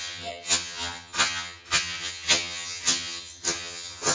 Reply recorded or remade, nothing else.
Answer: remade